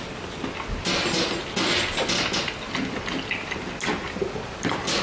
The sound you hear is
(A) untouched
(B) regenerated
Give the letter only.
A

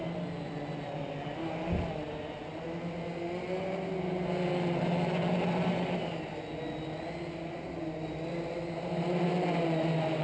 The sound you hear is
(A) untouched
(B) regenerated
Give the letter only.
A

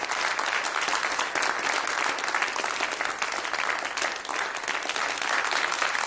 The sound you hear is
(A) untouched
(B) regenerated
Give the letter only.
A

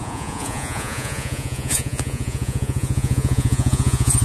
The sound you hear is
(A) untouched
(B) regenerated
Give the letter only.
B